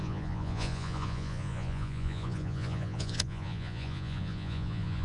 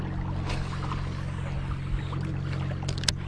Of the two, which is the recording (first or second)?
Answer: second